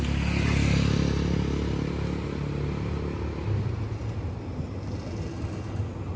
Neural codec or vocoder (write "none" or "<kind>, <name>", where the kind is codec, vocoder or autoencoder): none